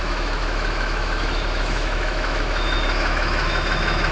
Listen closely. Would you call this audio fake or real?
fake